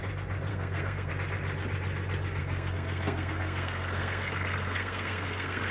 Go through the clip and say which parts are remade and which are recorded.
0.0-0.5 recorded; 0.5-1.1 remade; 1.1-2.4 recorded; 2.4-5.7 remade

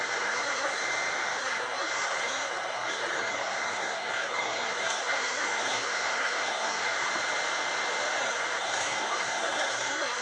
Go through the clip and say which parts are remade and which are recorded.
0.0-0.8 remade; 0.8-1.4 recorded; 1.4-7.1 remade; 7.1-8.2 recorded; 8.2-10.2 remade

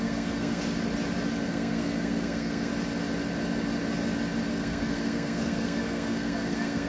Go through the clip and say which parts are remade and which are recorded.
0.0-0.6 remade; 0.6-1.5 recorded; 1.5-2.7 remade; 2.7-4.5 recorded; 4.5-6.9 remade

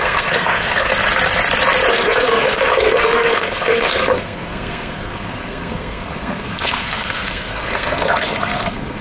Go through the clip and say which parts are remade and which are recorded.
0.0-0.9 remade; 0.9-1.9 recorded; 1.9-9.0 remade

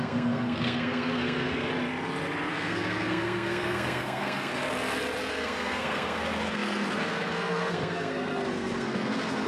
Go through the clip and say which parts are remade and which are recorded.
0.0-1.7 remade; 1.7-2.5 recorded; 2.5-4.5 remade; 4.5-5.3 recorded; 5.3-9.5 remade

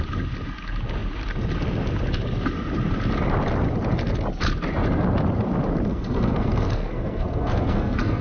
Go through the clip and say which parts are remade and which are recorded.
0.0-5.9 recorded; 5.9-8.2 remade

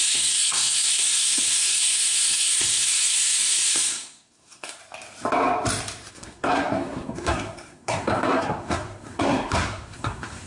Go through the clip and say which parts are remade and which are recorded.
0.0-4.8 remade; 4.8-6.1 recorded; 6.1-10.5 remade